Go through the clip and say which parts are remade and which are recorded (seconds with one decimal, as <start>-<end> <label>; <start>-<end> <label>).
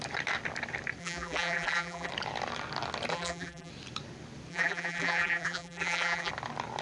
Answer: 0.0-1.0 recorded; 1.0-2.1 remade; 2.1-3.1 recorded; 3.1-3.7 remade; 3.7-4.5 recorded; 4.5-6.3 remade; 6.3-6.8 recorded